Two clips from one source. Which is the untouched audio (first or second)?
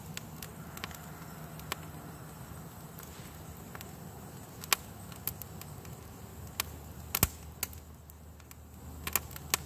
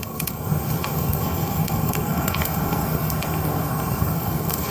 first